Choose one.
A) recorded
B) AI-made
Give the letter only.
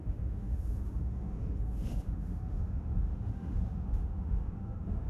B